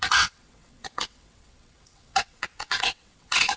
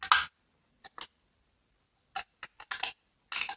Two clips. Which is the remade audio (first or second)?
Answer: first